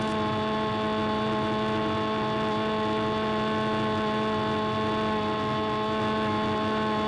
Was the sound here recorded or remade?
recorded